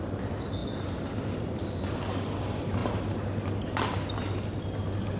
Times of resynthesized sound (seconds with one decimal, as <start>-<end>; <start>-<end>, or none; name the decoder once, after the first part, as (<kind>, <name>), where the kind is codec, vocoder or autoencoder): none